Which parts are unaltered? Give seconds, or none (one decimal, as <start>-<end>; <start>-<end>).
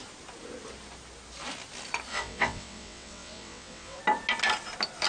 0.0-2.1; 4.0-5.1